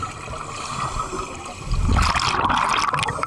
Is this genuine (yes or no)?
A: yes